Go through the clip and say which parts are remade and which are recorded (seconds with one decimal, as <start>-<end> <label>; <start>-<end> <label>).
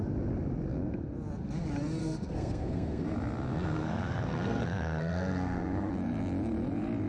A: 0.0-2.0 recorded; 2.0-3.0 remade; 3.0-3.5 recorded; 3.5-5.9 remade; 5.9-7.1 recorded